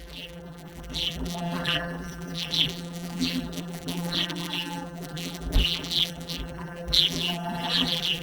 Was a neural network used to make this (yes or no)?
yes